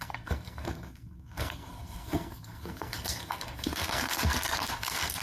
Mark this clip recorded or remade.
remade